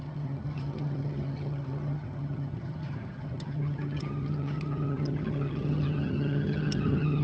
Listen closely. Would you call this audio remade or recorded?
remade